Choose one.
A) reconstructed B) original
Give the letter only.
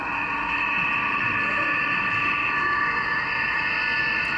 B